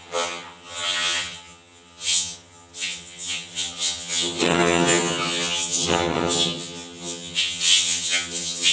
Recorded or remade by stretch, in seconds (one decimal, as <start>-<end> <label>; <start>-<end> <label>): 0.0-8.7 remade